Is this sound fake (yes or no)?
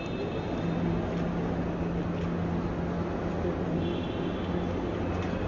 no